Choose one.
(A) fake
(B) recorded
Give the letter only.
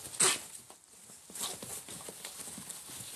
B